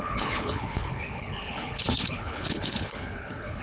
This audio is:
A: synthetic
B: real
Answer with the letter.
A